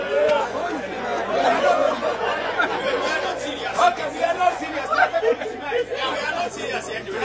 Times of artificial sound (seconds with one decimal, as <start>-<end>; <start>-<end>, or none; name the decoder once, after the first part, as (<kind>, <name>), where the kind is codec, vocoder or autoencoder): 0.0-7.2 (vocoder, Vocos)